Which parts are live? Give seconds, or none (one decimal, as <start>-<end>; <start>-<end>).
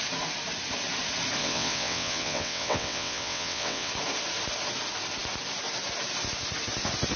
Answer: 0.0-1.4; 3.9-7.2